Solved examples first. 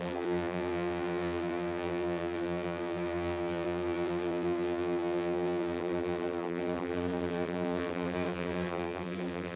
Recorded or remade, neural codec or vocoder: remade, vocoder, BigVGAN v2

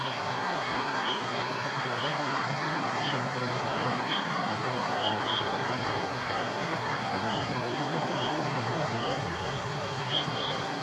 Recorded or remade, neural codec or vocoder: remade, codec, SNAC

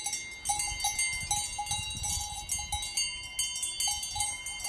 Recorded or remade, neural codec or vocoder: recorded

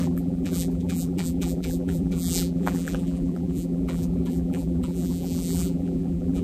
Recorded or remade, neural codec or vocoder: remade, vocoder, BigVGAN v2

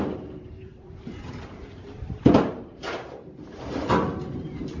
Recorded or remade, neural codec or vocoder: remade, vocoder, BigVGAN v2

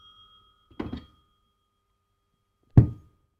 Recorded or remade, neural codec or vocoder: recorded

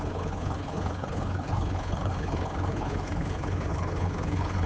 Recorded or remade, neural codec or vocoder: remade, codec, HILCodec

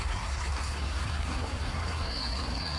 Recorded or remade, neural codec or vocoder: remade, codec, SNAC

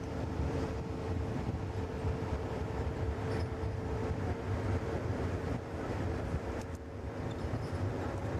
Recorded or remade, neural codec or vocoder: remade, vocoder, BigVGAN v2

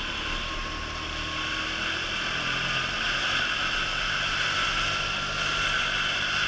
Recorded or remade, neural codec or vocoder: recorded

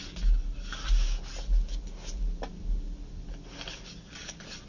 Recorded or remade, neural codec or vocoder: recorded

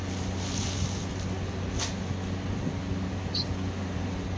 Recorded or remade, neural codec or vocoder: recorded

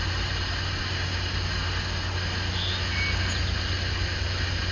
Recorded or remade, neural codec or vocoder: recorded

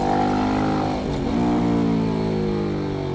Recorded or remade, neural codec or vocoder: recorded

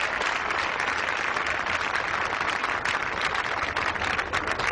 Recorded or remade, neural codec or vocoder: recorded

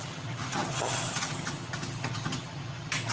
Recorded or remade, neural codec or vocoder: remade, vocoder, HiFi-GAN